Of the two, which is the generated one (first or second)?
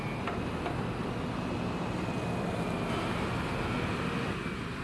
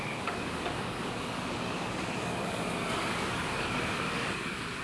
second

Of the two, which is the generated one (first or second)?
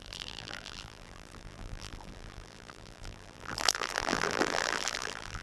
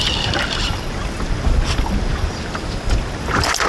first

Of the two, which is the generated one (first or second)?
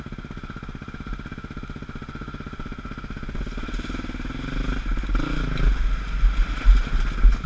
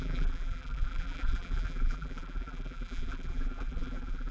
second